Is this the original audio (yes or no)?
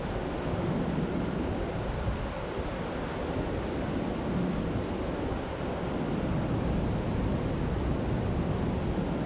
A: yes